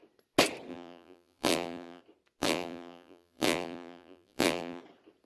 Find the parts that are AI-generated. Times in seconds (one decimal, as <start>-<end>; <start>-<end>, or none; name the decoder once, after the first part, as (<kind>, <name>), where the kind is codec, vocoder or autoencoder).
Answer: 0.7-2.0 (vocoder, BigVGAN v2); 2.4-4.8